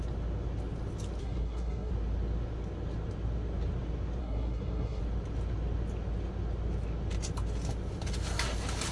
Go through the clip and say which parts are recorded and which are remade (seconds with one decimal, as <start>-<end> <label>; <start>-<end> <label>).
0.0-1.2 recorded; 1.2-1.9 remade; 1.9-4.2 recorded; 4.2-5.0 remade; 5.0-8.9 recorded